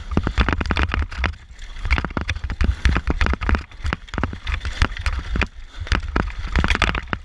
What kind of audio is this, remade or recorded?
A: recorded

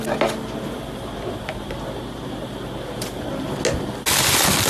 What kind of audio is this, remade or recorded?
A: recorded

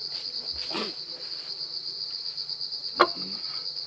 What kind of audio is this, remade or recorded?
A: recorded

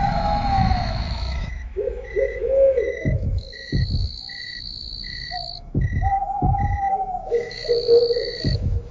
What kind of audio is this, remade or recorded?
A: remade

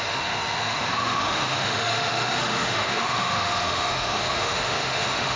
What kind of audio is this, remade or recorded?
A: remade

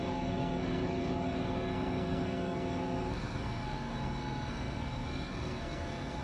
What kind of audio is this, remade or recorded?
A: remade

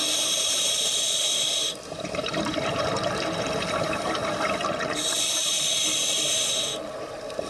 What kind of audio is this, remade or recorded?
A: recorded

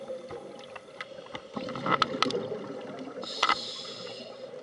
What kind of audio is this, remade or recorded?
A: recorded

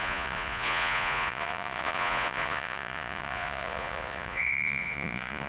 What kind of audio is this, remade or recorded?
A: remade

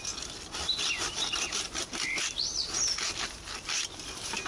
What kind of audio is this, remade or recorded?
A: recorded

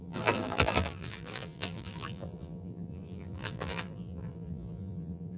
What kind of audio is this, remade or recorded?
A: remade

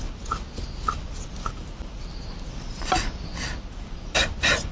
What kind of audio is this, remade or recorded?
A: recorded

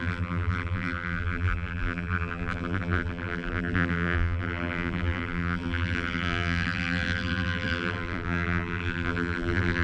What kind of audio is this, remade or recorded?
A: remade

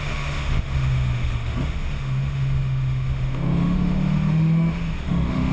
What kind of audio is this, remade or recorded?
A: remade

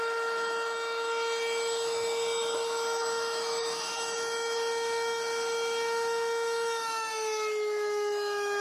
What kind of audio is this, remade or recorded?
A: remade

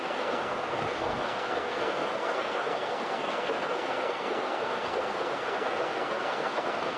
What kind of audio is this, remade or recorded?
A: remade